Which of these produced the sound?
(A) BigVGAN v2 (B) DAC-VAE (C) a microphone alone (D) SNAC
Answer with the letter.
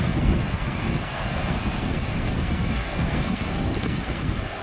D